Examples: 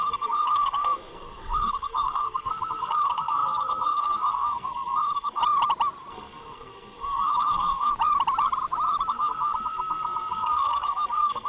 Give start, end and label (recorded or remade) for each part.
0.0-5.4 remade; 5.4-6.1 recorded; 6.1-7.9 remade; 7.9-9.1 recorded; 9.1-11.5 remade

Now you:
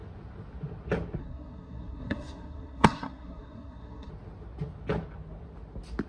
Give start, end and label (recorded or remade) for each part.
0.0-1.2 recorded; 1.2-4.1 remade; 4.1-6.1 recorded

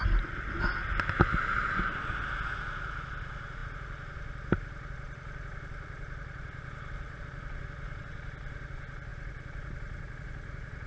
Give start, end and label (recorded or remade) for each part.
0.0-10.9 recorded

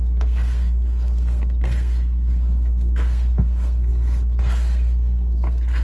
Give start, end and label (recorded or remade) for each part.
0.0-5.8 remade

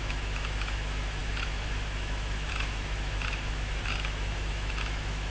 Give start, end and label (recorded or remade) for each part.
0.0-5.3 remade

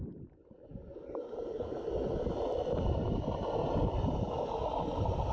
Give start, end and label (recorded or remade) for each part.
0.0-5.3 recorded

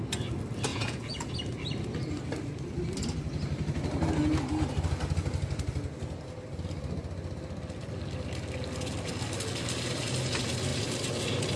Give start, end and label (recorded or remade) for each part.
0.0-0.7 recorded; 0.7-1.3 remade; 1.3-11.6 recorded

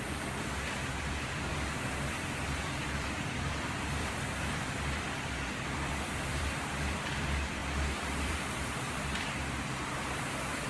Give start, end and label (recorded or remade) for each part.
0.0-10.7 remade